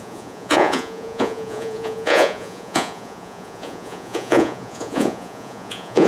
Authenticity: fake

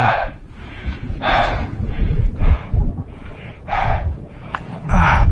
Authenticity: fake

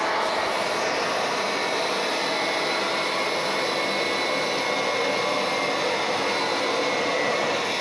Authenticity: real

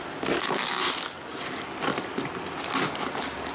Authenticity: real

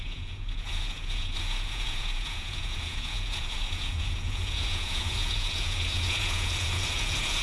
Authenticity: fake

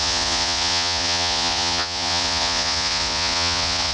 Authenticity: fake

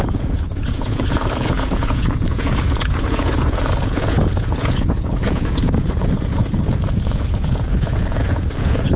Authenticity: fake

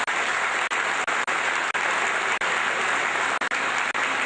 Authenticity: real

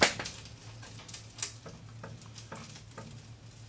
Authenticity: real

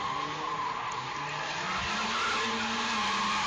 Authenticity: real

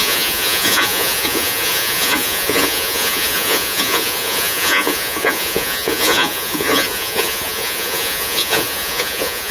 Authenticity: fake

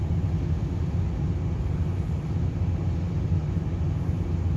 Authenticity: real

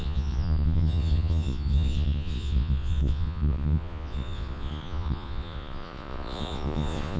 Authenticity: fake